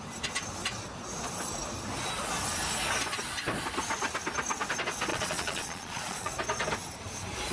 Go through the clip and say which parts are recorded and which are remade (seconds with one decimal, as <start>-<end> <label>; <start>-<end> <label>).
0.0-5.1 recorded; 5.1-6.3 remade; 6.3-7.5 recorded